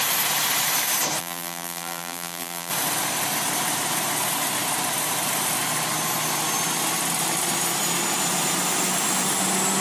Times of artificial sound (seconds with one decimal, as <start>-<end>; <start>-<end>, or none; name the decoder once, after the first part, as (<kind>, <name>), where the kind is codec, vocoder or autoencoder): 1.2-2.7 (vocoder, BigVGAN v2)